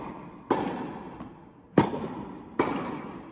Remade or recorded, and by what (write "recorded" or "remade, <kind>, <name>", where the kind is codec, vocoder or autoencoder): recorded